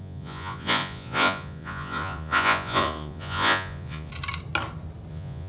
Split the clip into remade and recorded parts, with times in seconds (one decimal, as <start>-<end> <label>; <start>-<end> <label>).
0.0-4.1 remade; 4.1-5.1 recorded; 5.1-5.5 remade

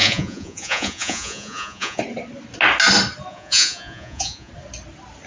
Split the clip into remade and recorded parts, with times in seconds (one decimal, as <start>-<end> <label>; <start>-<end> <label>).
0.0-2.0 remade; 2.0-3.3 recorded; 3.3-4.5 remade; 4.5-5.3 recorded

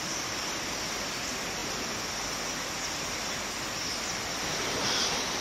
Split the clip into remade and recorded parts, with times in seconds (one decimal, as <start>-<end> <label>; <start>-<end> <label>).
0.0-5.4 recorded

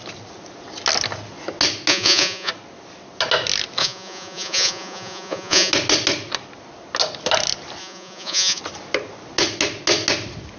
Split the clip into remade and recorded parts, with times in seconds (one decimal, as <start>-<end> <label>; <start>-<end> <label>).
0.0-1.9 recorded; 1.9-2.5 remade; 2.5-3.8 recorded; 3.8-5.7 remade; 5.7-7.8 recorded; 7.8-8.6 remade; 8.6-10.6 recorded

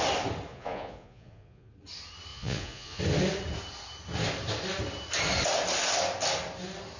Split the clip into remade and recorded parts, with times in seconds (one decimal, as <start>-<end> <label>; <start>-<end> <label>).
0.0-0.5 recorded; 0.5-1.7 remade; 1.7-2.3 recorded; 2.3-3.0 remade; 3.0-7.0 recorded

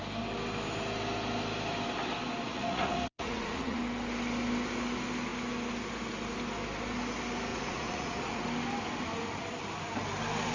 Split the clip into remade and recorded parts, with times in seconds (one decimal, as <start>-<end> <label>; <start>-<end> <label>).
0.0-2.5 recorded; 2.5-3.8 remade; 3.8-7.5 recorded; 7.5-8.4 remade; 8.4-10.5 recorded

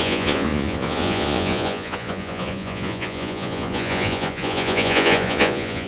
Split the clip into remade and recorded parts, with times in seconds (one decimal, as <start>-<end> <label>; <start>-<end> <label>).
0.0-5.9 remade